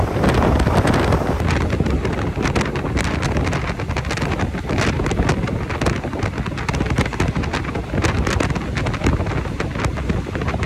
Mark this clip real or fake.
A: real